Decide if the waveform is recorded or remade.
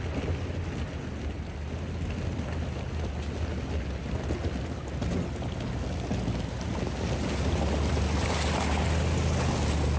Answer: recorded